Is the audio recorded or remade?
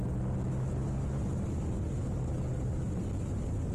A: recorded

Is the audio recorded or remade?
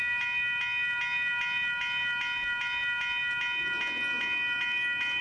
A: recorded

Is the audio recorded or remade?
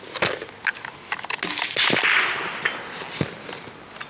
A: recorded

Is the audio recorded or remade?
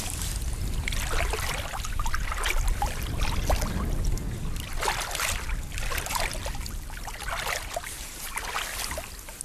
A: recorded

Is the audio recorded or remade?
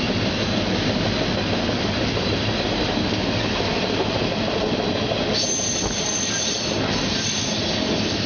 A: recorded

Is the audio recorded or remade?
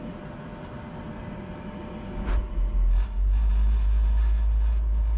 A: recorded